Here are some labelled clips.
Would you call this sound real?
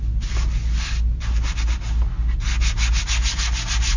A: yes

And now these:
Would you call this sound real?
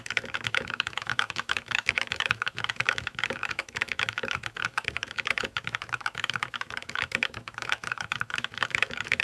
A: no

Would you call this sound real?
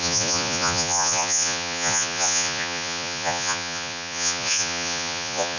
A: no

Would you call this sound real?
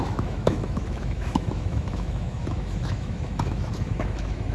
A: no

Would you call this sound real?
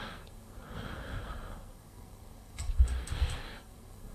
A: no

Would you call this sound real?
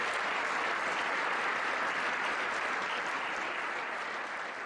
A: yes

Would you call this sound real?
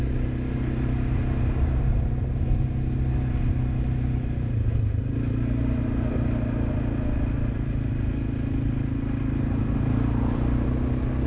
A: yes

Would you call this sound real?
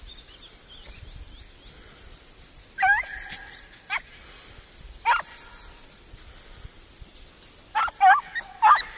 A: yes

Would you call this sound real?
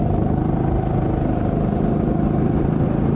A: yes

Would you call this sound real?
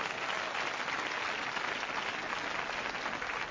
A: yes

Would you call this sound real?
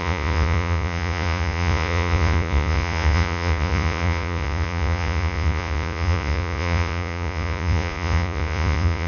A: no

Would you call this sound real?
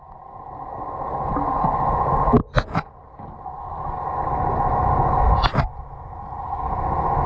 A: yes